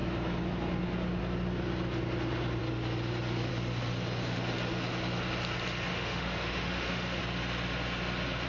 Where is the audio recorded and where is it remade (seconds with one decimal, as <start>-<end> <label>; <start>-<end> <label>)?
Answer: 0.0-5.9 recorded; 5.9-7.2 remade; 7.2-8.5 recorded